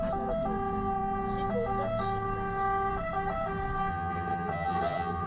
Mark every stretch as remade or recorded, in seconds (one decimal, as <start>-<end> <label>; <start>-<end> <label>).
0.0-3.9 recorded; 3.9-5.3 remade